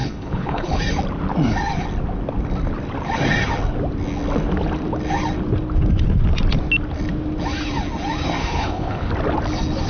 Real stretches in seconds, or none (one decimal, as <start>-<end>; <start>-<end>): 0.8-8.4; 9.1-9.9